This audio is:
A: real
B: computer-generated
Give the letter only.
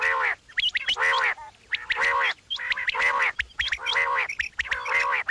A